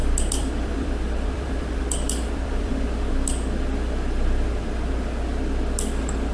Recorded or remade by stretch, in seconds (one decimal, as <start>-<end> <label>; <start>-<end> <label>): 0.0-2.7 remade; 2.7-6.3 recorded

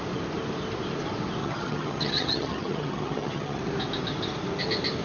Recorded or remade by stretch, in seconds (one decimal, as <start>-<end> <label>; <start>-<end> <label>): 0.0-1.4 recorded; 1.4-3.6 remade; 3.6-5.0 recorded

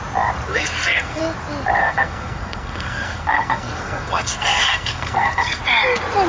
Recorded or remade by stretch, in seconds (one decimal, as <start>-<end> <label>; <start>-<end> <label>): 0.0-0.5 recorded; 0.5-1.2 remade; 1.2-1.8 recorded; 1.8-5.6 remade; 5.6-6.3 recorded

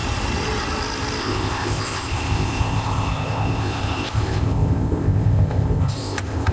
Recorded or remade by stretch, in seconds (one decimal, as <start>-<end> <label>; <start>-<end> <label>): 0.0-1.2 recorded; 1.2-6.5 remade

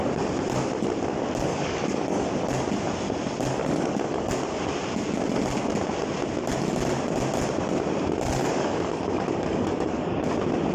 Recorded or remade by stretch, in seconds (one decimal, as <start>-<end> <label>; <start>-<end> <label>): 0.0-1.5 recorded; 1.5-2.3 remade; 2.3-3.6 recorded; 3.6-4.3 remade; 4.3-8.4 recorded; 8.4-10.2 remade; 10.2-10.7 recorded

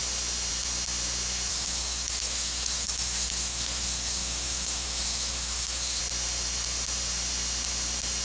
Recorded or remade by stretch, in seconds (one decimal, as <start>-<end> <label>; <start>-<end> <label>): 0.0-1.5 recorded; 1.5-6.0 remade; 6.0-8.2 recorded

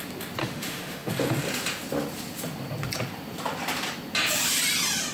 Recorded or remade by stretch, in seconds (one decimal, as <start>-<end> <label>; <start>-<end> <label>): 0.0-0.4 recorded; 0.4-1.1 remade; 1.1-5.1 recorded

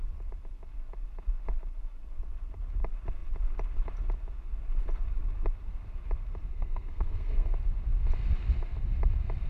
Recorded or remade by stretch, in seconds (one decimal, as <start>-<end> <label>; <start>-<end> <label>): 0.0-6.5 recorded; 6.5-7.5 remade; 7.5-9.5 recorded